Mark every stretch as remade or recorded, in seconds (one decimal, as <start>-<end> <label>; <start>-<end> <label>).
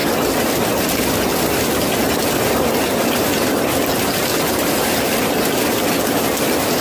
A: 0.0-4.3 recorded; 4.3-5.8 remade; 5.8-6.8 recorded